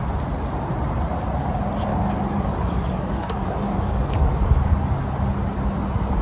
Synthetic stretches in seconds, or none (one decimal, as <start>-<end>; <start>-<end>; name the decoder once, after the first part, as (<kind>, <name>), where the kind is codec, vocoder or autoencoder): 1.9-4.7 (codec, DAC)